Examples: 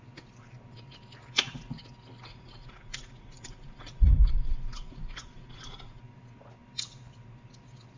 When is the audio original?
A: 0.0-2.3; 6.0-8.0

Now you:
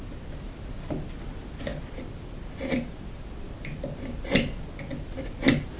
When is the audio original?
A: 0.0-5.8

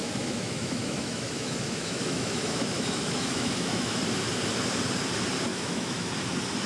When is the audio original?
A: 4.0-5.5; 6.1-6.7